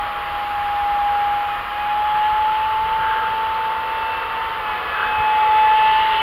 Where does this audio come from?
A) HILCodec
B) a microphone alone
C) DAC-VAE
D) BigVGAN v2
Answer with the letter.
B